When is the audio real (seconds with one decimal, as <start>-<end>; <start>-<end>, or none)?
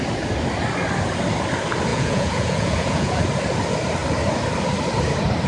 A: 0.0-1.9; 3.2-5.5